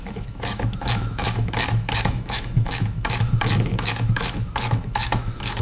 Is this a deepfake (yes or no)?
yes